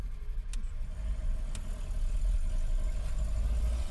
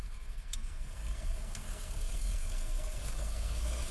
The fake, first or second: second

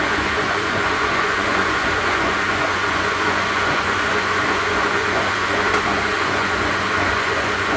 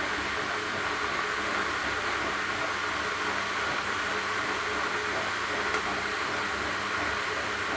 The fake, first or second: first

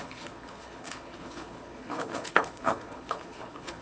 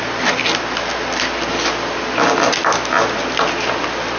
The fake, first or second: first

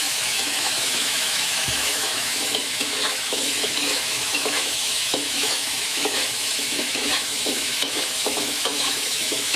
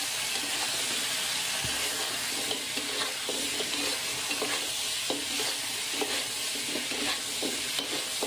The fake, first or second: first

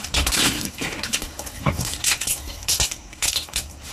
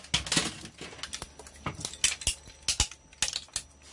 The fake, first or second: first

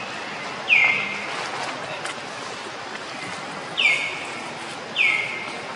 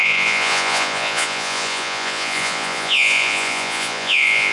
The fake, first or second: second